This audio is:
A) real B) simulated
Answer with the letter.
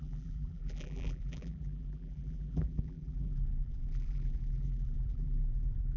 B